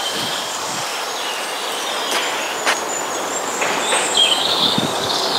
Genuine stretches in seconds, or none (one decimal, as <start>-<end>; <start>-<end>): 0.9-4.0